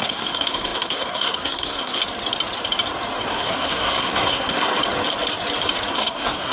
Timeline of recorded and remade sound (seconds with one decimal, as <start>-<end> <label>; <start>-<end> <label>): 0.0-2.0 remade; 2.0-3.3 recorded; 3.3-4.7 remade; 4.7-5.9 recorded; 5.9-6.5 remade